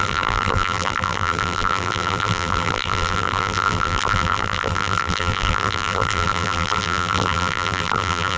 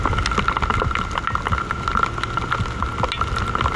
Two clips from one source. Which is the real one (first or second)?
second